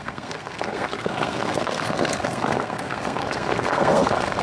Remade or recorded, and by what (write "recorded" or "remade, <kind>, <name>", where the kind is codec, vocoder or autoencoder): remade, codec, SNAC